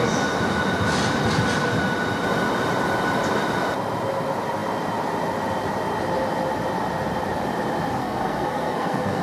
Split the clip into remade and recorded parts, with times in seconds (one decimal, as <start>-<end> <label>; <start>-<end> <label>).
0.0-8.0 recorded; 8.0-9.2 remade